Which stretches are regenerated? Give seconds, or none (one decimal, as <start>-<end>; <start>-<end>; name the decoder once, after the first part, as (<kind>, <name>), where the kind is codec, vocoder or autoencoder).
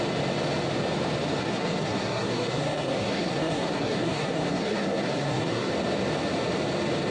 1.4-5.7 (codec, SNAC)